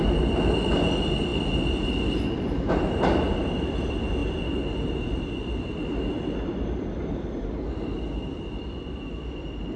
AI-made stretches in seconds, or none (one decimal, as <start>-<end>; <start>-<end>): none